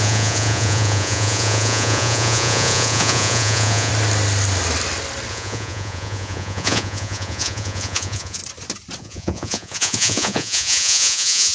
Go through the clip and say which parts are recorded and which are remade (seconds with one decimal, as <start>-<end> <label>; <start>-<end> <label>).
0.0-3.9 remade; 3.9-5.3 recorded; 5.3-8.4 remade; 8.4-9.0 recorded; 9.0-11.5 remade